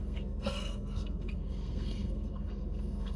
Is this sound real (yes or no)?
no